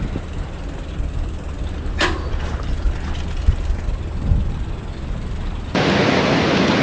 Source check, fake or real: real